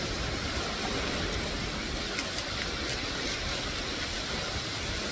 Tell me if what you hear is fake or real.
real